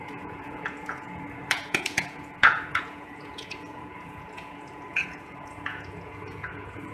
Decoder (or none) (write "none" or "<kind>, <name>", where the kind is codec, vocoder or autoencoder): vocoder, Vocos